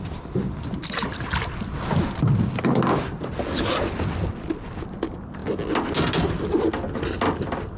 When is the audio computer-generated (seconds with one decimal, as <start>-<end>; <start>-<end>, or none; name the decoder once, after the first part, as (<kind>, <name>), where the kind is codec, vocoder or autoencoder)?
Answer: none

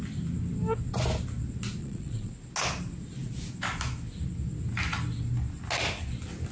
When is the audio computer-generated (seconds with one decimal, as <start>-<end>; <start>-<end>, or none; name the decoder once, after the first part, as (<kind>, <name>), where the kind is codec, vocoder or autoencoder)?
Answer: 1.8-2.3 (vocoder, Vocos)

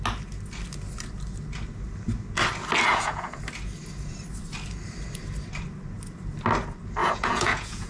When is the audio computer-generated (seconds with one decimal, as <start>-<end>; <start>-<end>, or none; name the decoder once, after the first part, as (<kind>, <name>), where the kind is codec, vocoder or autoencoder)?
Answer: 2.9-3.4 (vocoder, Vocos); 7.0-7.9

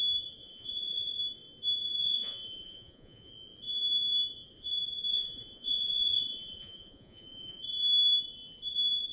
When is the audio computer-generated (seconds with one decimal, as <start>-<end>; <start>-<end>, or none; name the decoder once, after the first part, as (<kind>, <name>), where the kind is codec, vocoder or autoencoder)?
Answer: 0.4-1.1 (vocoder, Vocos); 2.0-3.3; 5.1-7.6

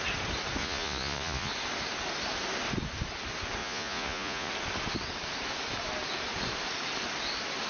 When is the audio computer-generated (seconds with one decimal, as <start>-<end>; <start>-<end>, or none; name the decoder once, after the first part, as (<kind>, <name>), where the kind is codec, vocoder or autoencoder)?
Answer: 0.6-1.5 (vocoder, Vocos); 3.6-4.5

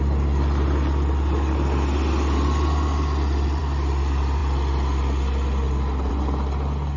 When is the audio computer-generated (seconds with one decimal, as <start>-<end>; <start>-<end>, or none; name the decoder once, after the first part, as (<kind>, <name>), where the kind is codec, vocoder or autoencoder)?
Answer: none

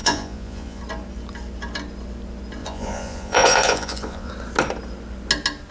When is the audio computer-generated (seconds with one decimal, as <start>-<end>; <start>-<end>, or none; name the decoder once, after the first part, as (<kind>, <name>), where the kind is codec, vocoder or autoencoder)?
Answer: 0.0-0.8 (vocoder, Vocos); 2.6-4.3